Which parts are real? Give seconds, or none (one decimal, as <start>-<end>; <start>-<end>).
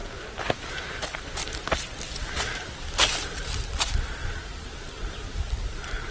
0.0-4.2